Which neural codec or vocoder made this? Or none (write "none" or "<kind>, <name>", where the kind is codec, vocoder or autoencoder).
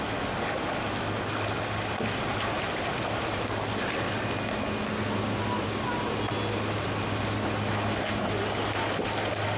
none